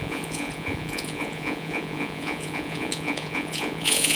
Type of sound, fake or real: fake